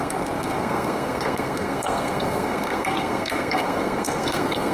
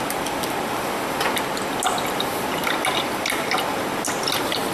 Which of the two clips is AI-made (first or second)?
first